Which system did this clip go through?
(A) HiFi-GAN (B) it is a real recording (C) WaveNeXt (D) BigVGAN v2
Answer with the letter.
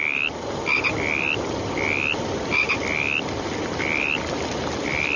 B